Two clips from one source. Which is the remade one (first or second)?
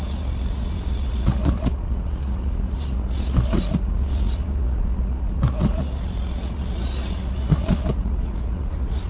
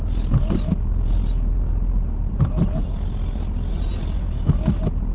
first